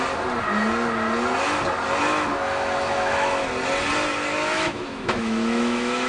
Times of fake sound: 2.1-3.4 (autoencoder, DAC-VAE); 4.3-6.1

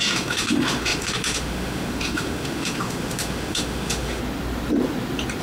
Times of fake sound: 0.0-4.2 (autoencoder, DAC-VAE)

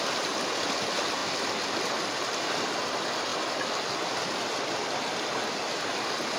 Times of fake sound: none